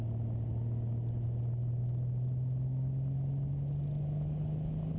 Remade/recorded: recorded